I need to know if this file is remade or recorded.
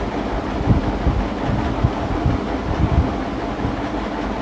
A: recorded